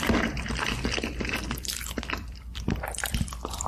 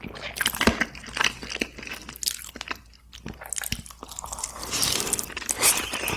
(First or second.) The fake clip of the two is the first